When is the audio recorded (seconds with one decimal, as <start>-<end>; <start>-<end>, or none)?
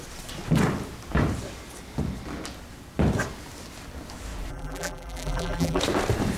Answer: 0.0-4.5; 5.8-6.4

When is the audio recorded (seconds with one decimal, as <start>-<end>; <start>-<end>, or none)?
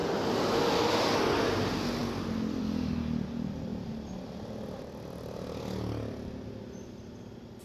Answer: 0.0-3.7; 5.6-7.6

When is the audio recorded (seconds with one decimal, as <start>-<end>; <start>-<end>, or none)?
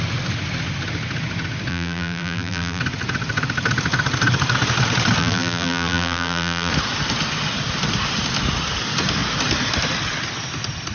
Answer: 0.0-1.7; 2.8-5.2; 6.7-10.9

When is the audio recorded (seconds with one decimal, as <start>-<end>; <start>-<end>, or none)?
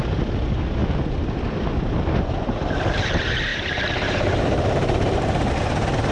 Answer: 0.0-3.5; 5.5-6.1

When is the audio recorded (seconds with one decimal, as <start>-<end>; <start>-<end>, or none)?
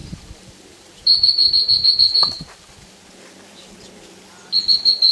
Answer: 3.0-5.1